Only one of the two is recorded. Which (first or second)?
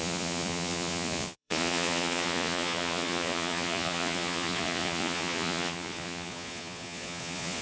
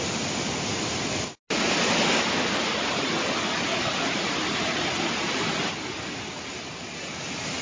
second